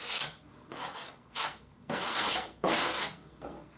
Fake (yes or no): yes